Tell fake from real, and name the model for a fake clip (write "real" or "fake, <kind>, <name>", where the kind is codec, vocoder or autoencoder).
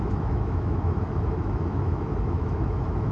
fake, autoencoder, DAC-VAE